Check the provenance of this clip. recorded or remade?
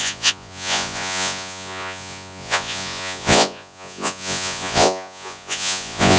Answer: remade